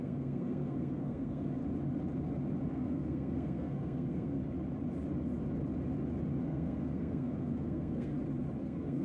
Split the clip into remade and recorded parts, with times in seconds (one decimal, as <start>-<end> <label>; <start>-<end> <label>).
0.0-1.6 remade; 1.6-2.7 recorded; 2.7-4.4 remade; 4.4-6.4 recorded; 6.4-8.1 remade; 8.1-8.6 recorded; 8.6-9.0 remade